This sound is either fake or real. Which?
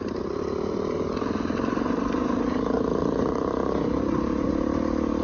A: real